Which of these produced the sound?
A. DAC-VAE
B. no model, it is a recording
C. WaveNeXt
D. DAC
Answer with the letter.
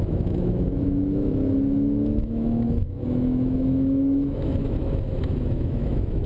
A